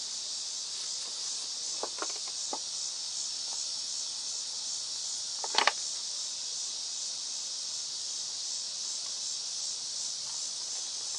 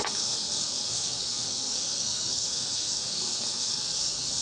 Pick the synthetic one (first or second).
second